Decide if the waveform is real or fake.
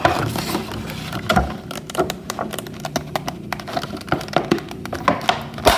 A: real